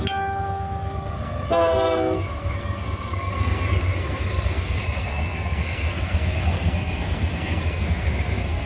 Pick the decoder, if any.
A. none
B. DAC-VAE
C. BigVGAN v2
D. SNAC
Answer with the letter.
D